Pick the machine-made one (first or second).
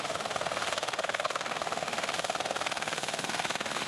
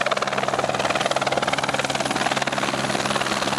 first